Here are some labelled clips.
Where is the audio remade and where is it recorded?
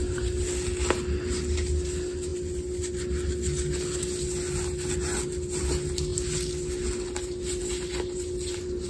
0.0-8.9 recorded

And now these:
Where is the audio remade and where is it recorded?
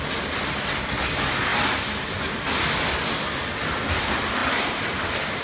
0.0-4.4 recorded; 4.4-5.4 remade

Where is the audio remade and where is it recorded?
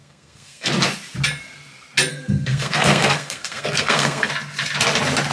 0.0-0.7 remade; 0.7-2.1 recorded; 2.1-4.3 remade; 4.3-5.3 recorded